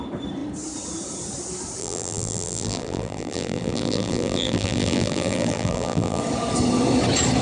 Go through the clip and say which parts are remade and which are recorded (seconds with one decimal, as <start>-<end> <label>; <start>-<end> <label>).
0.0-1.8 recorded; 1.8-6.2 remade; 6.2-7.4 recorded